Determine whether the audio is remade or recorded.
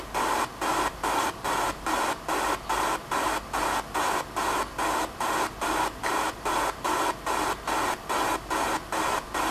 recorded